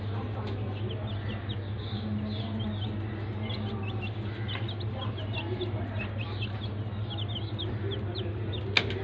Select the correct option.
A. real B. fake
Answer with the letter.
A